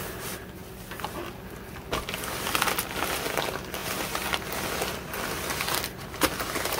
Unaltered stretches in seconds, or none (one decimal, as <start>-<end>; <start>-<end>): 0.0-6.8